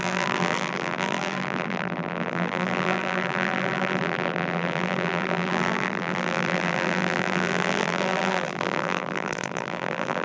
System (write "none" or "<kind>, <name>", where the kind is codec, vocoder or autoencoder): vocoder, BigVGAN v2